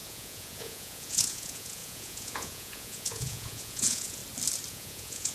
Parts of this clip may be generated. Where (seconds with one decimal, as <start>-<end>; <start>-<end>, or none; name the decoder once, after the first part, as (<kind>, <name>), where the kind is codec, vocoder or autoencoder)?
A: 0.0-4.2 (vocoder, Vocos); 4.7-5.3